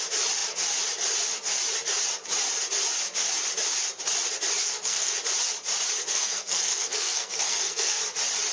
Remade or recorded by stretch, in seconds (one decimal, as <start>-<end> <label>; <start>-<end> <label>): 0.0-4.6 recorded; 4.6-5.1 remade; 5.1-6.1 recorded; 6.1-8.0 remade; 8.0-8.5 recorded